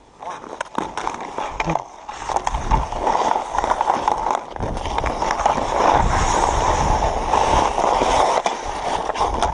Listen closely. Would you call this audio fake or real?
real